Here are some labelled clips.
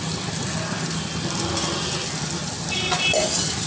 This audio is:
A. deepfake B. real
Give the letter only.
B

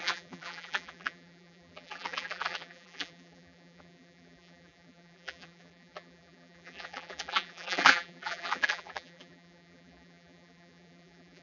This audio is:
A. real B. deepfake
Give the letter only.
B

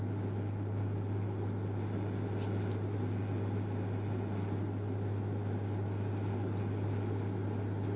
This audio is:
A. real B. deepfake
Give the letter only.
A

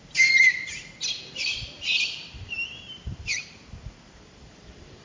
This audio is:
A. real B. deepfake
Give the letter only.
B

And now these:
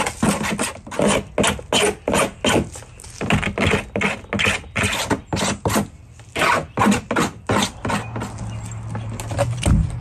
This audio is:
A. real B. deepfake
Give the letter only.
A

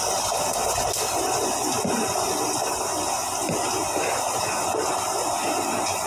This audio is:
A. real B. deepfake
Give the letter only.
A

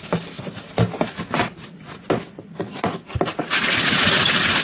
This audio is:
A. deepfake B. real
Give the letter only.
B